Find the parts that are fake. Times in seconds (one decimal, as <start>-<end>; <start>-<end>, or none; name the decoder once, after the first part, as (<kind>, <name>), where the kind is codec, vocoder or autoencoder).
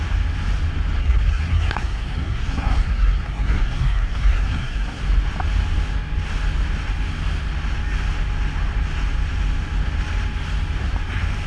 1.0-5.0 (codec, SNAC)